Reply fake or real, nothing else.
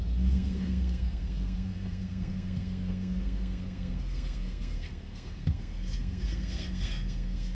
fake